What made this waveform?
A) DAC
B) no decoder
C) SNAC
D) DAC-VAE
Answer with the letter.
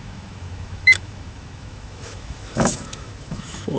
D